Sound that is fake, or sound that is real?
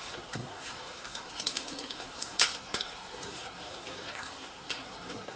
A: fake